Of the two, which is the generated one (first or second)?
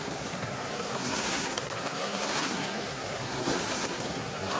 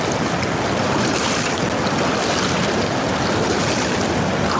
first